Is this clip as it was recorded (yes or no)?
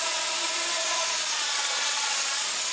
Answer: yes